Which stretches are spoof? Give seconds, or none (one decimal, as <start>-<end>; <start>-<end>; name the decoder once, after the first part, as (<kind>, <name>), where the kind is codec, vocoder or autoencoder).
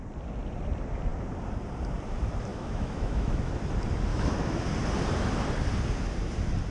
2.5-3.5 (autoencoder, DAC-VAE); 4.1-4.6